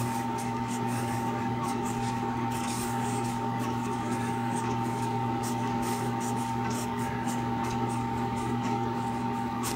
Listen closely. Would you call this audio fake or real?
fake